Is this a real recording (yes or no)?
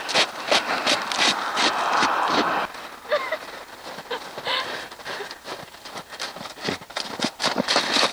yes